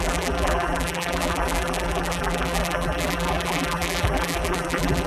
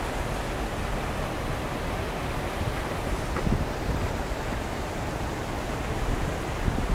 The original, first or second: second